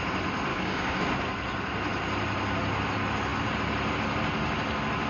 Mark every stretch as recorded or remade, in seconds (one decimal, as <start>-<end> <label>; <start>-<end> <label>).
0.0-0.5 recorded; 0.5-1.0 remade; 1.0-5.1 recorded